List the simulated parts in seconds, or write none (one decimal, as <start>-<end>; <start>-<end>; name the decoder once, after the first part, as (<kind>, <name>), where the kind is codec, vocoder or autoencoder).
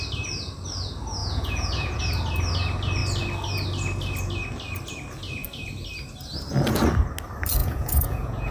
1.2-2.0 (vocoder, Vocos); 7.6-8.5